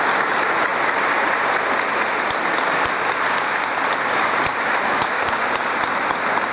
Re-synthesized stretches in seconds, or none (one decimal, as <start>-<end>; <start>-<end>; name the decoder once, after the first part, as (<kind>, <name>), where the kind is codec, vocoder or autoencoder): 4.5-5.5 (codec, DAC)